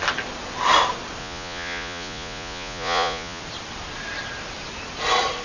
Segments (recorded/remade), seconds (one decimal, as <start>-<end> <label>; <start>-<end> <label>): 0.0-1.2 recorded; 1.2-3.4 remade; 3.4-5.4 recorded